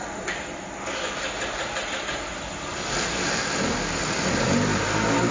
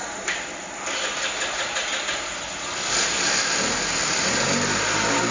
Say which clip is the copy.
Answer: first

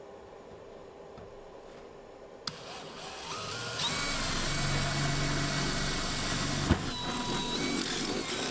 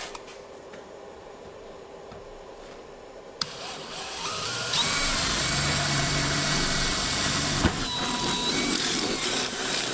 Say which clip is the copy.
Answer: second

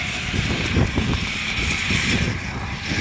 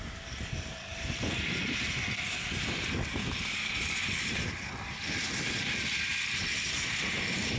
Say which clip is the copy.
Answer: first